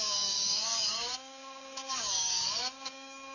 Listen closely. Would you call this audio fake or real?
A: fake